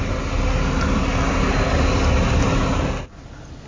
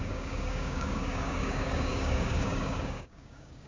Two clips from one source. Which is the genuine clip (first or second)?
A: first